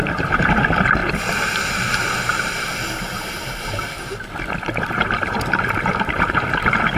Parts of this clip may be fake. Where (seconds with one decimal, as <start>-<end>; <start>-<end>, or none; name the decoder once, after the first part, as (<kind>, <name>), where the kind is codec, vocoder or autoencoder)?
0.0-1.0 (vocoder, BigVGAN v2); 4.9-7.0